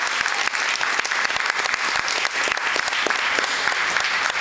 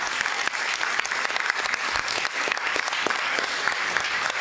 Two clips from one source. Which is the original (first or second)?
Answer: first